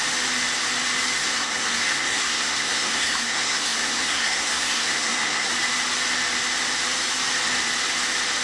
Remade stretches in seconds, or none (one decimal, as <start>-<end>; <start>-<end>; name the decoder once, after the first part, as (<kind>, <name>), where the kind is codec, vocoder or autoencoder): 1.2-5.5 (codec, SNAC)